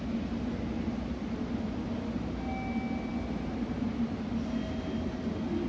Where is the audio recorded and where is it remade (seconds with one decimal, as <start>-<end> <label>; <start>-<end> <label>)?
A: 0.0-5.7 recorded